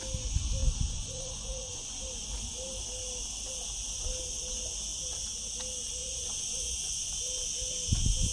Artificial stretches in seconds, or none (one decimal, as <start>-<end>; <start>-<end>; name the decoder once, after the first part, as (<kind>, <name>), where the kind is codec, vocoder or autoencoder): 0.6-2.8 (vocoder, Vocos); 6.0-7.1